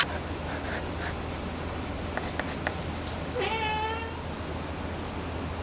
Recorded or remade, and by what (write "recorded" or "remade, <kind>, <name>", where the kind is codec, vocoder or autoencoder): recorded